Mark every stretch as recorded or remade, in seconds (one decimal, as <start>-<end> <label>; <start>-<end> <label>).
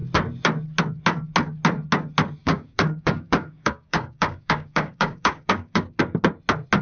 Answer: 0.0-2.4 recorded; 2.4-6.0 remade; 6.0-6.8 recorded